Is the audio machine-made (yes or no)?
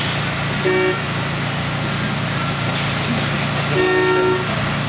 no